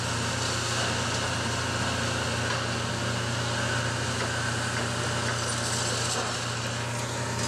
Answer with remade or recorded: recorded